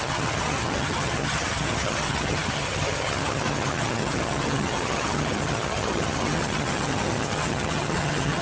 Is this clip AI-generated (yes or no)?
yes